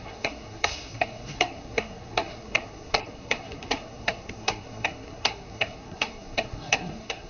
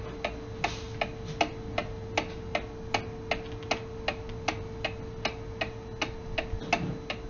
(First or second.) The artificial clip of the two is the first